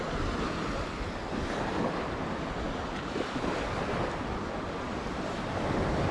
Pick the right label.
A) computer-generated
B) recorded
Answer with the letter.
B